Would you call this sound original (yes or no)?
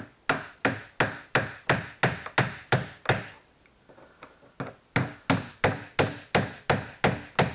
yes